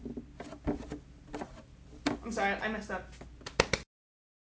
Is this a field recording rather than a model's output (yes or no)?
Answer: yes